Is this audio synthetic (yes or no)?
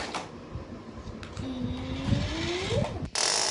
no